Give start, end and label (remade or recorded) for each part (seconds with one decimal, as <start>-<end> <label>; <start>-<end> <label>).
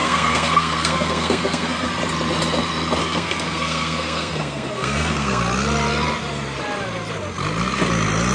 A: 0.0-1.9 remade; 1.9-3.0 recorded; 3.0-5.4 remade; 5.4-8.3 recorded